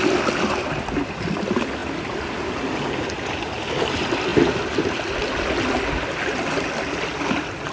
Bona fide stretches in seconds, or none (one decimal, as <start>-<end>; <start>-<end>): 0.0-7.7

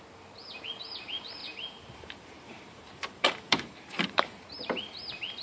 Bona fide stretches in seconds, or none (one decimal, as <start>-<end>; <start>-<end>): 0.0-1.4; 4.5-5.4

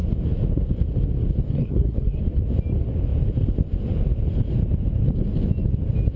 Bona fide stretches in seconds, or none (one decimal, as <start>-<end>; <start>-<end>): 0.0-1.5; 2.2-6.2

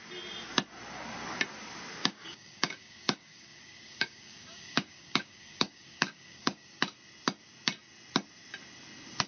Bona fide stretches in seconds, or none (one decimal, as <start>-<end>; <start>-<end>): 0.0-2.0; 6.8-9.3

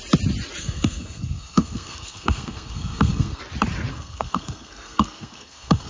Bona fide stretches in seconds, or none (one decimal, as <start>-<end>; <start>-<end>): 0.0-0.6; 3.4-3.9

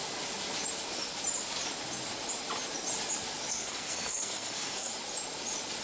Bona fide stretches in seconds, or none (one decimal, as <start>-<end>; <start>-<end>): 0.0-3.5; 4.9-5.8